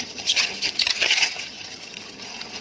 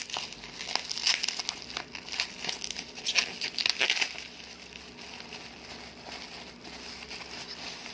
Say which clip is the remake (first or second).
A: first